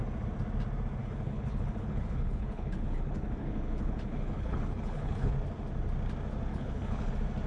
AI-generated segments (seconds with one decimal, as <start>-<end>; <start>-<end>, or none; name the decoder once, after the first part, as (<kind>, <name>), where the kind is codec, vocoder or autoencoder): 1.0-5.3 (codec, HILCodec); 6.5-7.1